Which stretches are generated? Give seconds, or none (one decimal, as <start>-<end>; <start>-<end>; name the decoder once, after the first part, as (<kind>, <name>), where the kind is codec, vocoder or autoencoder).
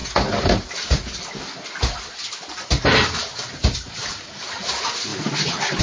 none